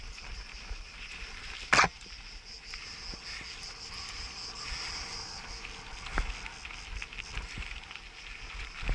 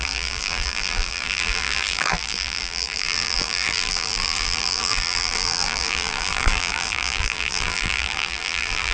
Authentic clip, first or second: first